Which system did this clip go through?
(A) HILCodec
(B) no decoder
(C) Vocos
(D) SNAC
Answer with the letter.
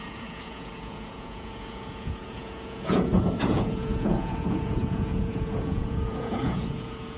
C